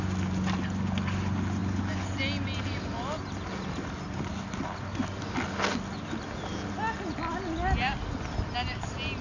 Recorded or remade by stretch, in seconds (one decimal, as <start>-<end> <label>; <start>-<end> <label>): 0.0-9.2 recorded